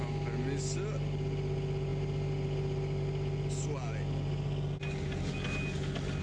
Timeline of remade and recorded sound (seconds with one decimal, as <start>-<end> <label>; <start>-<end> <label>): 0.0-6.2 recorded